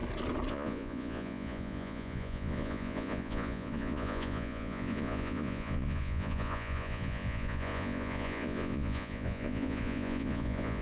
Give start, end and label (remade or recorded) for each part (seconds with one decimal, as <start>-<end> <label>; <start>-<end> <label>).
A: 0.0-0.5 recorded; 0.5-10.8 remade